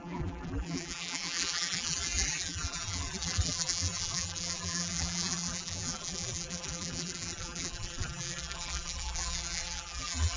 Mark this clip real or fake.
fake